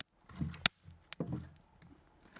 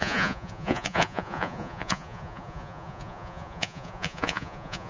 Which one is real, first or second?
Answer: first